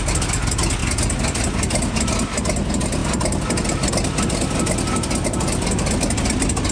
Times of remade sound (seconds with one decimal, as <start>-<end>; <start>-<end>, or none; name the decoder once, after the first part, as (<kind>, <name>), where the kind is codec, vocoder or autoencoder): none